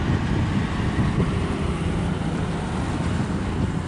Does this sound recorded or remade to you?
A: recorded